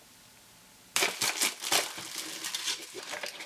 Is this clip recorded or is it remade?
recorded